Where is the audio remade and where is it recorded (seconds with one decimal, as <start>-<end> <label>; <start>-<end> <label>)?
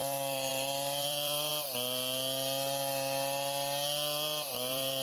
0.0-1.5 remade; 1.5-4.5 recorded; 4.5-5.0 remade